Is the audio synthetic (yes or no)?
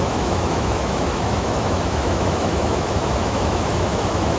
yes